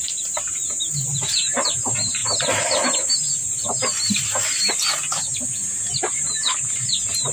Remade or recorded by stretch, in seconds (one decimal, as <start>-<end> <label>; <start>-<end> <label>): 0.0-7.3 recorded

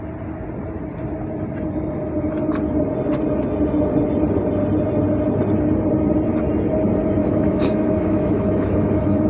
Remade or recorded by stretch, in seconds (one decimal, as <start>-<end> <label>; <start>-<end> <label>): 0.0-7.2 recorded; 7.2-9.3 remade

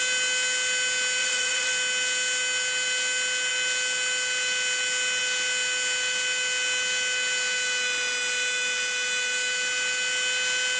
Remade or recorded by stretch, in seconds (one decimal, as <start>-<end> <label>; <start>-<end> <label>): 0.0-1.2 recorded; 1.2-1.7 remade; 1.7-10.8 recorded

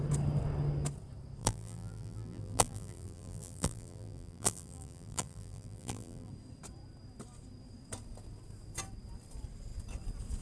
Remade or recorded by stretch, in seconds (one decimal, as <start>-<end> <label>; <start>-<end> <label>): 0.0-1.4 recorded; 1.4-6.3 remade; 6.3-10.4 recorded

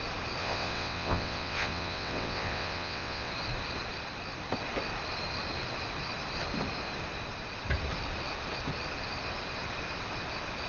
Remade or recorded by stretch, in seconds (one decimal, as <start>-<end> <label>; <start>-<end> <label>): 0.0-0.4 recorded; 0.4-3.3 remade; 3.3-10.7 recorded

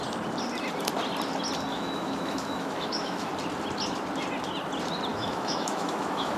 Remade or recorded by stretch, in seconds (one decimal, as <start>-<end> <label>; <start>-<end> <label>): 0.0-1.7 recorded; 1.7-3.3 remade; 3.3-5.1 recorded; 5.1-6.4 remade